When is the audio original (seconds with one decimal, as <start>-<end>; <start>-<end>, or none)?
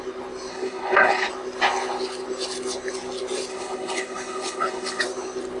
0.0-0.5; 1.3-3.5; 5.0-5.6